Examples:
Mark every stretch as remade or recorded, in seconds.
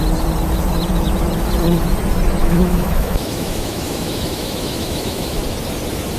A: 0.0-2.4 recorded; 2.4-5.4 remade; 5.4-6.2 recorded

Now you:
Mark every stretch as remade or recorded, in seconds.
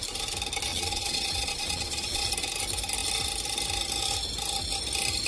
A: 0.0-0.7 recorded; 0.7-2.3 remade; 2.3-5.3 recorded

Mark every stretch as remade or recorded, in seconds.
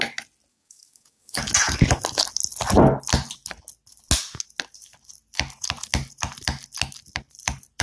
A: 0.0-0.5 recorded; 0.5-1.5 remade; 1.5-7.8 recorded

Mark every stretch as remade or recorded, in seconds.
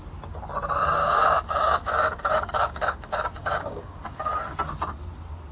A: 0.0-1.0 recorded; 1.0-4.3 remade; 4.3-5.5 recorded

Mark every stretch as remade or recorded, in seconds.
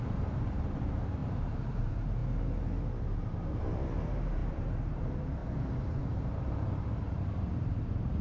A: 0.0-2.2 remade; 2.2-3.6 recorded; 3.6-8.2 remade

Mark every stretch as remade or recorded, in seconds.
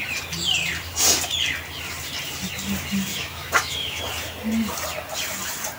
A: 0.0-3.1 recorded; 3.1-4.0 remade; 4.0-5.8 recorded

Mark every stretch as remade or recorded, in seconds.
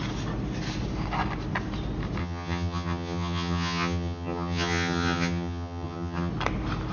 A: 0.0-2.2 recorded; 2.2-6.3 remade; 6.3-6.9 recorded